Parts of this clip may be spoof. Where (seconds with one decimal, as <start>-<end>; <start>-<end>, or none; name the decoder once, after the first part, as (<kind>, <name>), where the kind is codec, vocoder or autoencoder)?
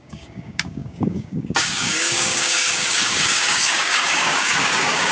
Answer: 0.0-5.1 (codec, DAC)